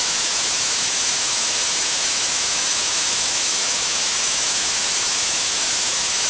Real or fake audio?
fake